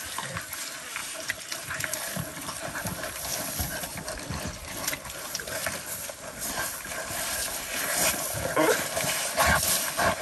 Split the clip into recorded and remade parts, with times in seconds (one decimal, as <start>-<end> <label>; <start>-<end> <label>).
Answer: 0.0-1.0 recorded; 1.0-1.8 remade; 1.8-10.2 recorded